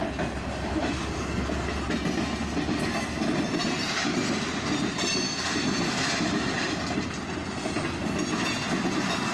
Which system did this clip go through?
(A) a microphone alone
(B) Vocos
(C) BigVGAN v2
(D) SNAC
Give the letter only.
A